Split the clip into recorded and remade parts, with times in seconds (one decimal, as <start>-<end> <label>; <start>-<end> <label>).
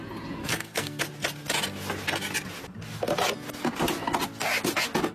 0.0-0.4 recorded; 0.4-1.0 remade; 1.0-5.1 recorded